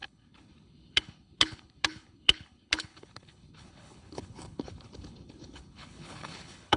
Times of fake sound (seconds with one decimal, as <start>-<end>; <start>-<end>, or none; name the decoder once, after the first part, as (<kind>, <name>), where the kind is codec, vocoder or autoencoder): 0.0-6.8 (codec, HILCodec)